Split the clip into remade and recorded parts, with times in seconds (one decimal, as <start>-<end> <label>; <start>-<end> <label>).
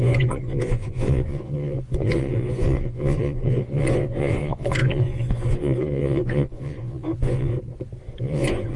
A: 0.0-7.5 remade; 7.5-8.2 recorded; 8.2-8.8 remade